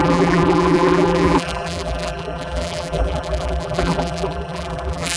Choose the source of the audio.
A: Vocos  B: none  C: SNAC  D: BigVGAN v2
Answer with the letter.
D